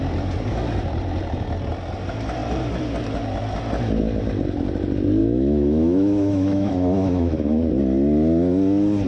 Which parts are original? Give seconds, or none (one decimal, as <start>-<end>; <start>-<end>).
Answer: 0.0-5.2; 7.7-9.1